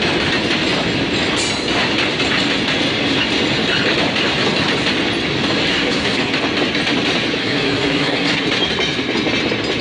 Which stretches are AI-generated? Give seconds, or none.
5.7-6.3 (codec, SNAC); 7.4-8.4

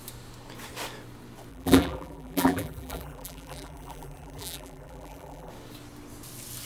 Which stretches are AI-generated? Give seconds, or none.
1.5-5.5 (vocoder, BigVGAN v2)